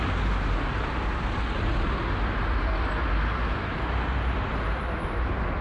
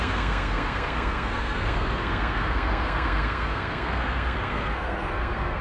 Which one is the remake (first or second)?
second